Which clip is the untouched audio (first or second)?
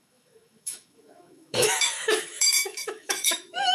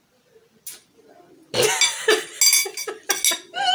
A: second